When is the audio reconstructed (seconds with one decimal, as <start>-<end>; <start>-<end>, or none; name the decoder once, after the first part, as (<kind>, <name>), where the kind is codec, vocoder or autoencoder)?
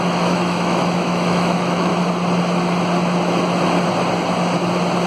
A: 0.0-1.9 (autoencoder, DAC-VAE)